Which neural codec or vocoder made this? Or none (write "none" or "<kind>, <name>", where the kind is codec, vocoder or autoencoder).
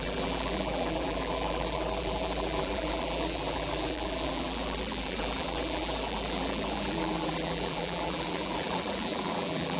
vocoder, BigVGAN v2